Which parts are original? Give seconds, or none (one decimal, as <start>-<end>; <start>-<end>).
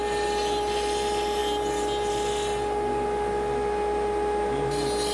0.0-5.1